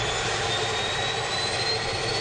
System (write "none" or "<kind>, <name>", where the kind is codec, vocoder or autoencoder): none